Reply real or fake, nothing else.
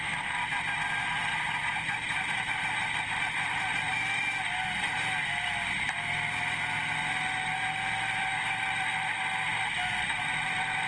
real